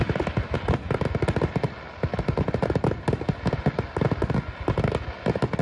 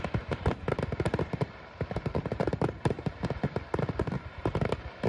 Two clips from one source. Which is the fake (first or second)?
second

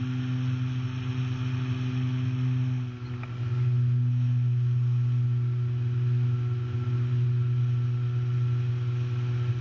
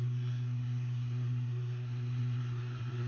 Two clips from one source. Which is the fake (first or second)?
second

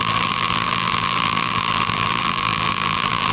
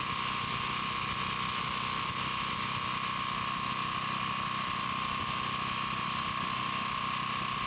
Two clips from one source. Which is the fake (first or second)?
first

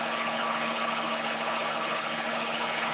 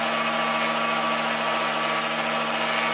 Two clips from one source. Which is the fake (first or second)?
first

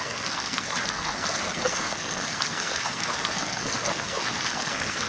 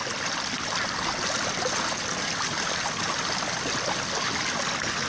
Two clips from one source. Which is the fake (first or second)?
first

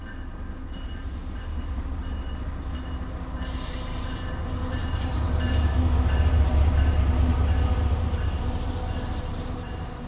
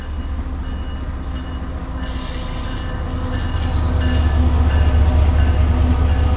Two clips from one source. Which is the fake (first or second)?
first